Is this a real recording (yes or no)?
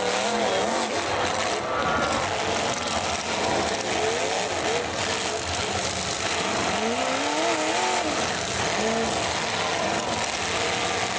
yes